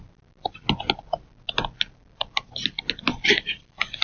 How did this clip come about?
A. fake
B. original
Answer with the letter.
B